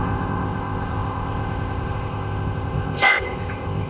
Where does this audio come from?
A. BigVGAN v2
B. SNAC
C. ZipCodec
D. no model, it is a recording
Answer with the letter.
C